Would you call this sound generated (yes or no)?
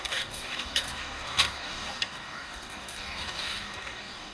yes